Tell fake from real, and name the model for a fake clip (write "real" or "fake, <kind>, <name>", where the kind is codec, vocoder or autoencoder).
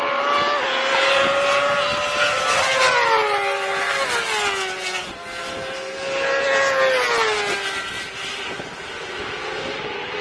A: real